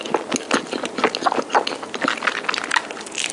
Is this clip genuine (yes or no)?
yes